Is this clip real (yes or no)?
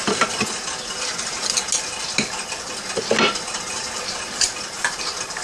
yes